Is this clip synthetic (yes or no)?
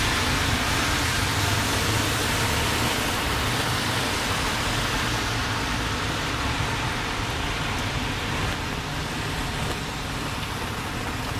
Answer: no